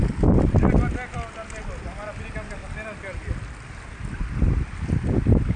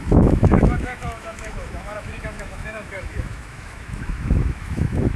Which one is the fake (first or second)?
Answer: second